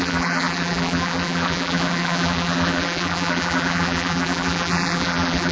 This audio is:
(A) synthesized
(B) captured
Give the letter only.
A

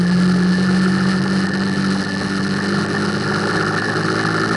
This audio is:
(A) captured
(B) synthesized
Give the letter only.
A